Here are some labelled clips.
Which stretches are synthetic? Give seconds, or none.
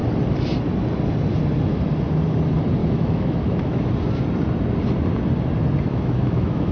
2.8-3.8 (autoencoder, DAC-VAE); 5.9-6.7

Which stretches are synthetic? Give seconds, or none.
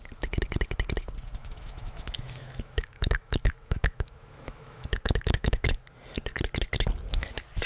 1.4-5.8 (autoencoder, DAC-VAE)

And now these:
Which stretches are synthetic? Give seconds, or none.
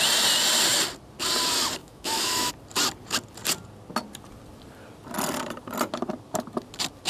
1.8-2.5 (autoencoder, DAC-VAE)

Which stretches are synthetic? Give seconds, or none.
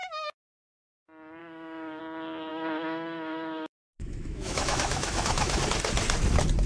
0.0-0.7 (autoencoder, DAC-VAE); 1.4-2.0; 2.5-5.6